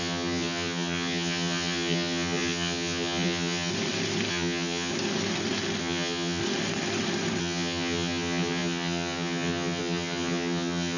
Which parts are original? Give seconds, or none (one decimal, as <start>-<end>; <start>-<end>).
3.7-4.3; 4.9-5.8; 6.4-7.4